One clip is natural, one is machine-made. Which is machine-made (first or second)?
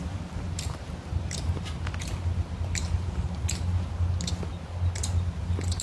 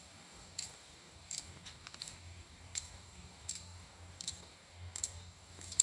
second